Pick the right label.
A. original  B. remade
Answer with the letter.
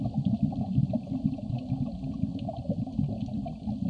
A